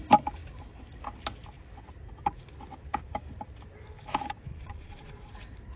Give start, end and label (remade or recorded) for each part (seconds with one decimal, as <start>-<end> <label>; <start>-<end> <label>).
0.0-4.5 recorded; 4.5-5.3 remade; 5.3-5.8 recorded